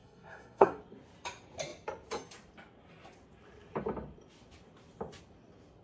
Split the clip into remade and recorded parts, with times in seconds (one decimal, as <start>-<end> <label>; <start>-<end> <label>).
0.0-0.8 remade; 0.8-5.8 recorded